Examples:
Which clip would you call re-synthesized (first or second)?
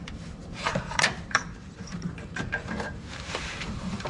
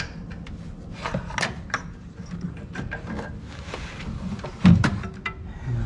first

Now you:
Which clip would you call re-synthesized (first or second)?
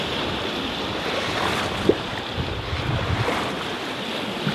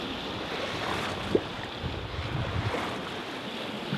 first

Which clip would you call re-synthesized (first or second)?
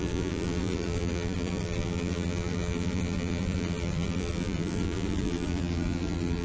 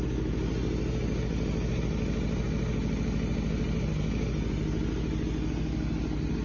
first